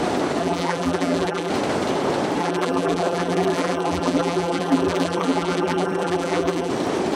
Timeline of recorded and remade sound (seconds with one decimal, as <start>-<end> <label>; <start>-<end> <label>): 0.0-0.4 recorded; 0.4-1.5 remade; 1.5-2.4 recorded; 2.4-6.7 remade; 6.7-7.2 recorded